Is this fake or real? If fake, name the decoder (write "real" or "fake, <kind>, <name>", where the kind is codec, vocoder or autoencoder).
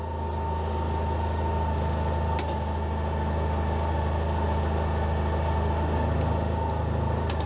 real